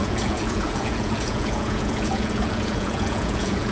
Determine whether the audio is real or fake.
fake